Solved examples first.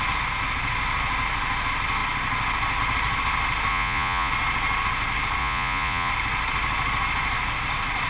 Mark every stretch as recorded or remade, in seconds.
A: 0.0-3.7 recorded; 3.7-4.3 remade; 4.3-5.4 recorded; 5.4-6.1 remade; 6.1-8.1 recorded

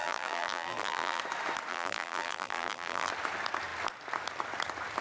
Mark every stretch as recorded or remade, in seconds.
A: 0.0-1.2 remade; 1.2-1.7 recorded; 1.7-3.1 remade; 3.1-5.0 recorded